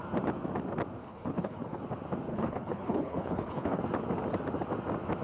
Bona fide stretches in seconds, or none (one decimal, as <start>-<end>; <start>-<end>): 0.0-1.0; 1.8-2.3; 3.8-5.2